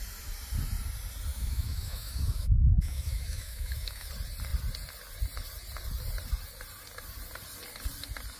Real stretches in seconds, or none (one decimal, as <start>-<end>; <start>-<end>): 0.0-1.3; 4.1-8.4